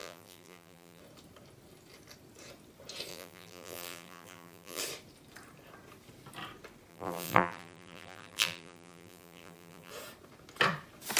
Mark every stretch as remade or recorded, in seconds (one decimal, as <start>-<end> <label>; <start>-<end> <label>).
0.0-1.0 remade; 1.0-3.1 recorded; 3.1-4.8 remade; 4.8-6.9 recorded; 6.9-9.9 remade; 9.9-11.2 recorded